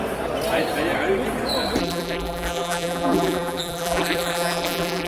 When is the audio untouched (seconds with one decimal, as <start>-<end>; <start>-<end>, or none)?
0.0-1.8